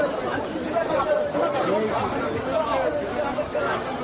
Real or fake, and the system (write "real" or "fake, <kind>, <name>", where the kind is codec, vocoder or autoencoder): real